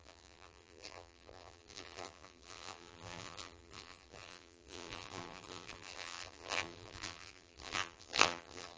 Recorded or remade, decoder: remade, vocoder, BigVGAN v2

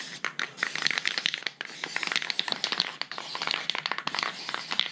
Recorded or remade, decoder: remade, vocoder, BigVGAN v2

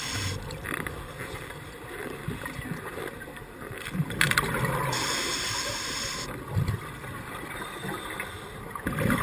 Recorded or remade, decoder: recorded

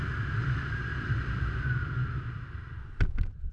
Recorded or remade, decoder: recorded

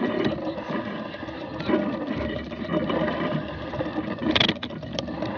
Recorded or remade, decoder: remade, vocoder, BigVGAN v2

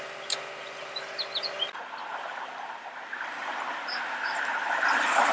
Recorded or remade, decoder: recorded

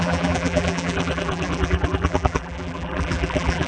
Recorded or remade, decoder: remade, vocoder, BigVGAN v2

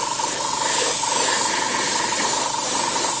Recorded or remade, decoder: recorded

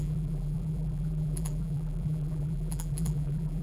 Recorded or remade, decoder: remade, vocoder, BigVGAN v2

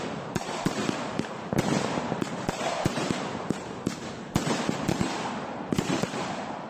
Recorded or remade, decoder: remade, vocoder, BigVGAN v2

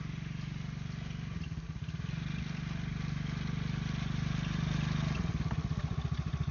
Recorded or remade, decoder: recorded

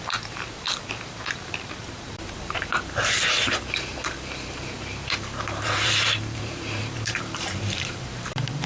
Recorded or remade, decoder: remade, vocoder, BigVGAN v2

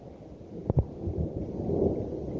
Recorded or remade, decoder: remade, vocoder, BigVGAN v2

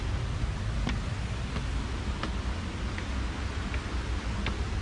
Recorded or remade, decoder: recorded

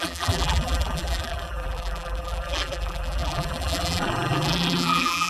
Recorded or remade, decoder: remade, vocoder, BigVGAN v2